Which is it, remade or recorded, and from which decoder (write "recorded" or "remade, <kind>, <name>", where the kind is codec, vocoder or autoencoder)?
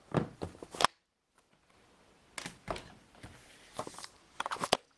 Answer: recorded